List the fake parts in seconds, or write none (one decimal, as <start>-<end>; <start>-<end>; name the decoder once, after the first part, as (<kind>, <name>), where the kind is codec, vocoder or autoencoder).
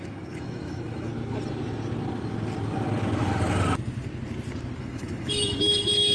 0.0-1.1 (autoencoder, DAC-VAE); 4.8-6.1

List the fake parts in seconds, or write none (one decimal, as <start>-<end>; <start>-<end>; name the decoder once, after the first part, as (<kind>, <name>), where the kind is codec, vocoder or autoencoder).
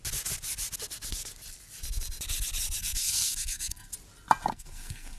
2.8-3.9 (codec, SNAC); 4.5-5.2